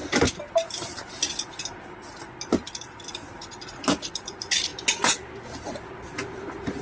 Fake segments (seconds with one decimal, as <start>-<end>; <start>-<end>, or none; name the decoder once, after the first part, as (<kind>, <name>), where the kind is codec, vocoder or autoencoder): none